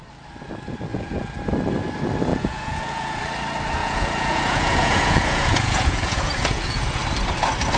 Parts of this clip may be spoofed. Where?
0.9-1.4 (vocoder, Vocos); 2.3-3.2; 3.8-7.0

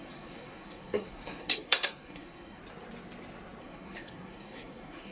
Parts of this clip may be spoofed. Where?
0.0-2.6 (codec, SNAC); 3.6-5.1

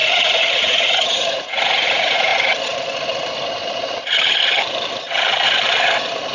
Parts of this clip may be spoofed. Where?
0.0-2.3 (vocoder, Vocos)